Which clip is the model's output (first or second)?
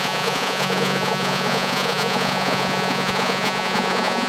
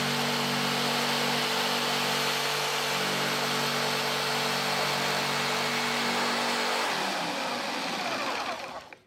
first